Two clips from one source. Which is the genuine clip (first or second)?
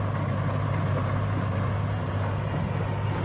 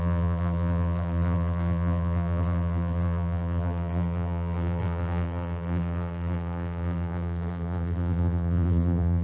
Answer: first